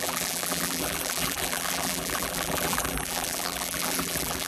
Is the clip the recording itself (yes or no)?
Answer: no